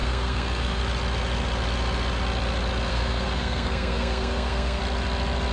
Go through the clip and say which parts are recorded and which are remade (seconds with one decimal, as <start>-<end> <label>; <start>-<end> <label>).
0.0-0.8 remade; 0.8-2.9 recorded; 2.9-4.8 remade; 4.8-5.5 recorded